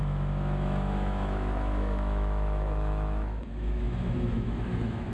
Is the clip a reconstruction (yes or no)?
yes